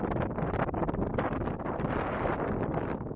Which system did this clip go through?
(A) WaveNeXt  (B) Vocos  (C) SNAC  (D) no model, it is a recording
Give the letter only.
D